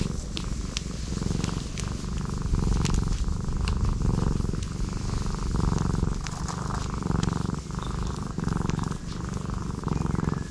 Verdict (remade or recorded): recorded